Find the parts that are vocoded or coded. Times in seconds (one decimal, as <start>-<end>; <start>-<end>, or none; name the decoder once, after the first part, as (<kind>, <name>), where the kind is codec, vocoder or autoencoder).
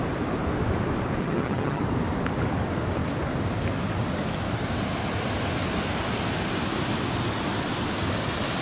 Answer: 1.2-1.8 (vocoder, HiFi-GAN)